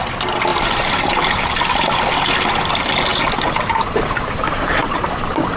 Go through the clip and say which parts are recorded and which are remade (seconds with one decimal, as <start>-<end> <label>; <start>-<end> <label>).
0.0-0.5 recorded; 0.5-2.0 remade; 2.0-3.1 recorded; 3.1-5.6 remade